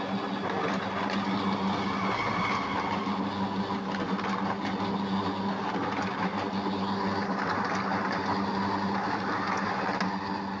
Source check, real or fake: real